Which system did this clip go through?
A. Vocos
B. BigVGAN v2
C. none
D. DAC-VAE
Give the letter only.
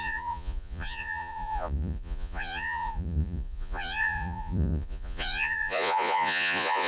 A